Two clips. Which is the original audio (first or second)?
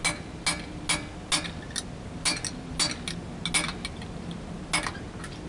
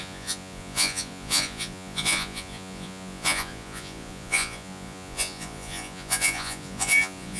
first